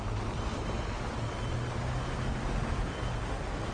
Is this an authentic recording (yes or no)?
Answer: yes